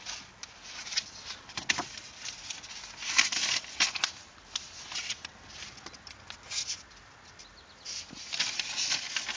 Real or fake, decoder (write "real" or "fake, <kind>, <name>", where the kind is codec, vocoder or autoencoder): real